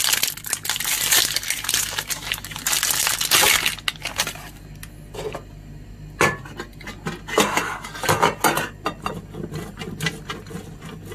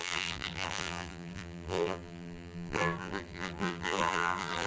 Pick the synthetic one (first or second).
second